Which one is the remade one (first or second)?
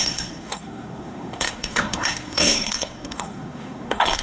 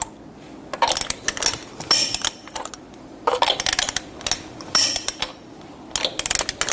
first